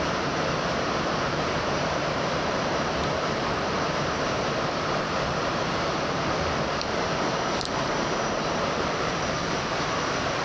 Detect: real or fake fake